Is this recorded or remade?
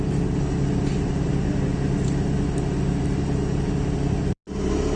recorded